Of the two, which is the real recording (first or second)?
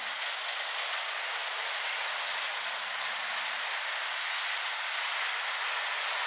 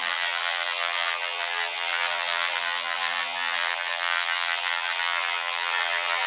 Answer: first